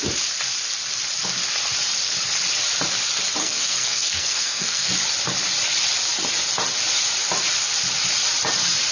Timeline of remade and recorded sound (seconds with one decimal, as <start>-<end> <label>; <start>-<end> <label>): 0.0-3.4 recorded; 3.4-4.9 remade; 4.9-8.9 recorded